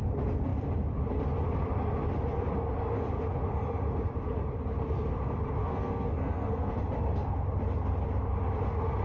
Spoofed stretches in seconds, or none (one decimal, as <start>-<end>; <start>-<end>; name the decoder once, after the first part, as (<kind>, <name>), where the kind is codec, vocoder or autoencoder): 5.6-6.8 (codec, SNAC)